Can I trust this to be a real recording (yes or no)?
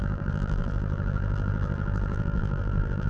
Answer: no